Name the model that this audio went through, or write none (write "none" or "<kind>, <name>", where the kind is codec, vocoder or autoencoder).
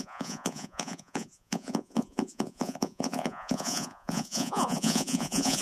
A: vocoder, Vocos